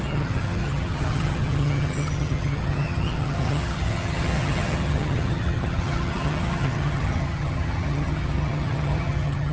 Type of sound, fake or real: fake